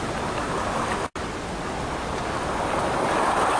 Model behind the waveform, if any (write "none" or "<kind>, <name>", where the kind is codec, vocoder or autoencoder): none